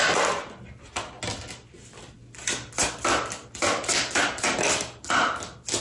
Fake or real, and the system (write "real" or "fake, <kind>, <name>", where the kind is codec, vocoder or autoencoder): real